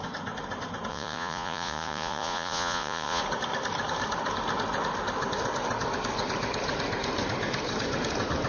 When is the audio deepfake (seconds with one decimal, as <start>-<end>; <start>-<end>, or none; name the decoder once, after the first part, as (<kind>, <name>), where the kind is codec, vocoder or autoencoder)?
0.9-3.2 (vocoder, Vocos)

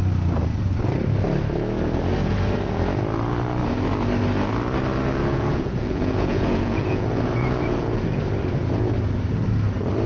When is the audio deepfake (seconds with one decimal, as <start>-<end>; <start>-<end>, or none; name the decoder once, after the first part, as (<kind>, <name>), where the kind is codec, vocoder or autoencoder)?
5.2-8.2 (vocoder, Vocos)

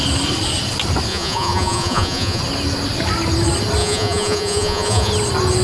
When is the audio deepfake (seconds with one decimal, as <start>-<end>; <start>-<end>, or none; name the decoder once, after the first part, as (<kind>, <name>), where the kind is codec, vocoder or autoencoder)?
1.1-2.4 (vocoder, Vocos); 3.8-5.1

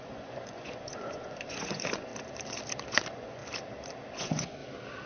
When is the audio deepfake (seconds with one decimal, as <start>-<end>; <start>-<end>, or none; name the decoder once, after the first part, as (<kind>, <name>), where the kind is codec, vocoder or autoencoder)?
0.0-2.1 (vocoder, Vocos); 2.9-3.4; 4.1-4.6

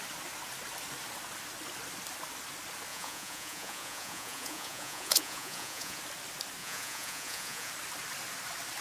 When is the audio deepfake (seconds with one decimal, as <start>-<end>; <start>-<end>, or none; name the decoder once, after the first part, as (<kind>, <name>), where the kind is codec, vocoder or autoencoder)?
2.9-6.0 (vocoder, Vocos); 6.6-7.7

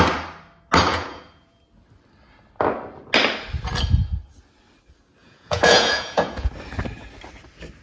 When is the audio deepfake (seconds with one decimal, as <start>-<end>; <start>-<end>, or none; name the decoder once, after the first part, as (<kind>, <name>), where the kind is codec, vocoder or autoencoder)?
0.9-1.6 (vocoder, Vocos); 5.2-6.5